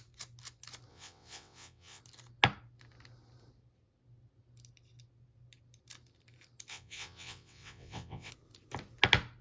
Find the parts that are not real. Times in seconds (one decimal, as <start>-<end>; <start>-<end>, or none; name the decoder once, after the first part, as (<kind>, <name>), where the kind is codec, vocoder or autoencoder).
0.9-2.0 (vocoder, WaveNeXt); 6.7-8.3

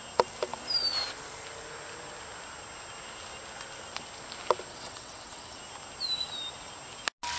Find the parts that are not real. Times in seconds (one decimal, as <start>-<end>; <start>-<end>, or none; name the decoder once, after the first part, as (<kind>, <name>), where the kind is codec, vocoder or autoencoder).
4.7-5.6 (vocoder, WaveNeXt)

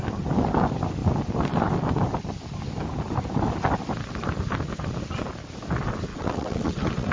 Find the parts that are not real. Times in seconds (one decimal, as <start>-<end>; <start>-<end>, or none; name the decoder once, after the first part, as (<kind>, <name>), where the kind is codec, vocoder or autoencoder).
6.1-7.1 (vocoder, WaveNeXt)

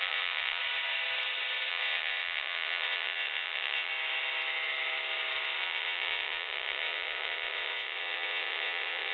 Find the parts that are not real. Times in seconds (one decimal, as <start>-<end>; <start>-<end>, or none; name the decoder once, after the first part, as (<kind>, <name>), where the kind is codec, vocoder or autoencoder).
0.0-0.6 (vocoder, WaveNeXt); 1.7-3.9; 5.6-9.1

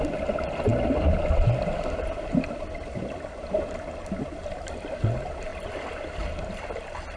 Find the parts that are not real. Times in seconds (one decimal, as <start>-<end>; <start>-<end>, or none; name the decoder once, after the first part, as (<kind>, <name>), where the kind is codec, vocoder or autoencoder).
none